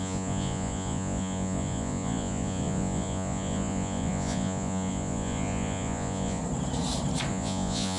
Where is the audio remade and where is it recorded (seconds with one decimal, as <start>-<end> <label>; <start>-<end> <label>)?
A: 0.0-6.4 remade; 6.4-7.3 recorded; 7.3-8.0 remade